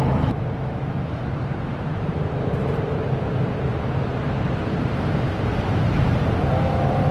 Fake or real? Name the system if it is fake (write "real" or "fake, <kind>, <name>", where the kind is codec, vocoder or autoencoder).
fake, vocoder, BigVGAN v2